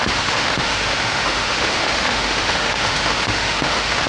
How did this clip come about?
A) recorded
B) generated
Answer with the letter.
B